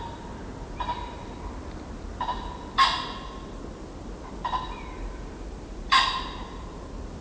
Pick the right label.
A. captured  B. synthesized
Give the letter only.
A